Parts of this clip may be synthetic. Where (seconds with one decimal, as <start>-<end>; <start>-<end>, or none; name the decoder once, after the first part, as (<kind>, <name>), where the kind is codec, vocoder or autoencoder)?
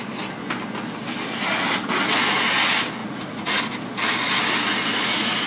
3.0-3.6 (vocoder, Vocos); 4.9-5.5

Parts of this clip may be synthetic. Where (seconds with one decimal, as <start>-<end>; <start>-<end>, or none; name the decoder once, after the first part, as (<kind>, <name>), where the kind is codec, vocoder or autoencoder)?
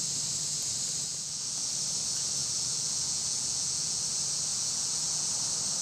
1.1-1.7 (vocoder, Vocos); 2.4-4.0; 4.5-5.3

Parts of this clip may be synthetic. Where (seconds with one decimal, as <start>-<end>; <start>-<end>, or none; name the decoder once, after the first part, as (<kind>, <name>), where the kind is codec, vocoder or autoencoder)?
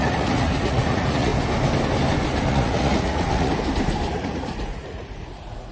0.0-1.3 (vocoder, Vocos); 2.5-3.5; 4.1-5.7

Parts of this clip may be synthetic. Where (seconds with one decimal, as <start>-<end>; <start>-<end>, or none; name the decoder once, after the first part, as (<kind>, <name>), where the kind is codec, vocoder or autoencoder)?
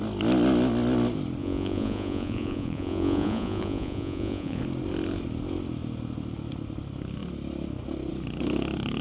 1.4-4.6 (vocoder, Vocos)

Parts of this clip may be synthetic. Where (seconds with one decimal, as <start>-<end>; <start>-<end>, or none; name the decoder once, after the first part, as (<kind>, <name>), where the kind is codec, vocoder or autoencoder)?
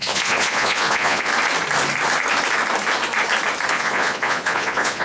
0.0-1.3 (vocoder, Vocos); 3.7-5.0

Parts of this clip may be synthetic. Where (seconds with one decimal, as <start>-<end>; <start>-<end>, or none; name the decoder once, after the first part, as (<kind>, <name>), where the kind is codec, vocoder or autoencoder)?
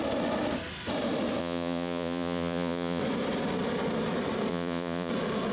1.4-3.0 (vocoder, Vocos); 4.5-5.1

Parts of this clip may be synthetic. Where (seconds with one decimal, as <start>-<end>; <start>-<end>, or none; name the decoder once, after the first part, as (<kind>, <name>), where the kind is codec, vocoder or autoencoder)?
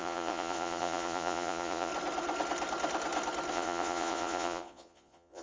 0.0-1.9 (vocoder, Vocos); 3.5-5.4